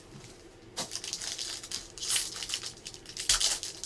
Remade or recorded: recorded